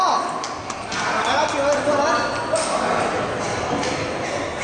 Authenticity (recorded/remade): recorded